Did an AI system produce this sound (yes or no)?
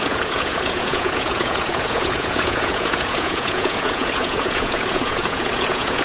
yes